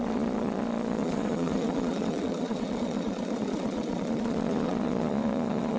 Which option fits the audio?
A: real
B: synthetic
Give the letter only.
B